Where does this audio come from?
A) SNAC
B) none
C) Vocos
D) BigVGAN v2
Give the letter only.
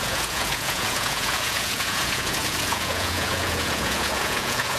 C